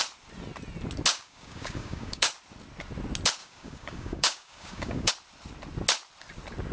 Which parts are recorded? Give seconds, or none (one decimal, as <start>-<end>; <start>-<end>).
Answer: 0.0-1.1; 2.3-3.4; 5.1-6.7